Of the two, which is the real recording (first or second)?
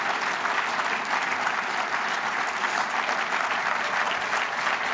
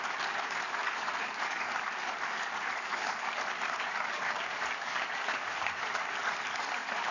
first